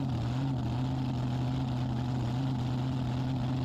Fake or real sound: real